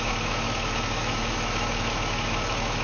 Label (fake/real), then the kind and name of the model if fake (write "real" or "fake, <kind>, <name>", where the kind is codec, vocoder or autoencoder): fake, autoencoder, DAC-VAE